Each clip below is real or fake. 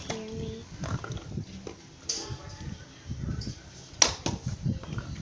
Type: real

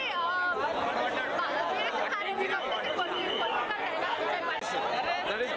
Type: real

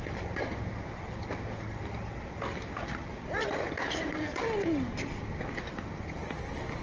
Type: real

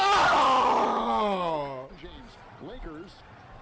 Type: real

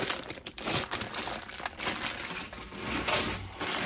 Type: real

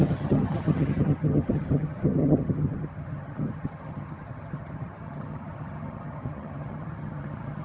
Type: fake